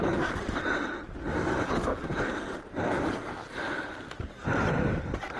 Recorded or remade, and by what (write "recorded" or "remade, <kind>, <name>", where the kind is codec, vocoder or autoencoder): recorded